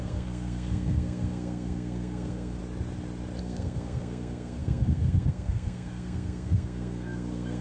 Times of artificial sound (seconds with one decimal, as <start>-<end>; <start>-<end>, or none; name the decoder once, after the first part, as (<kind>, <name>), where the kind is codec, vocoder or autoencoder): 0.0-2.6 (codec, SNAC); 3.4-7.6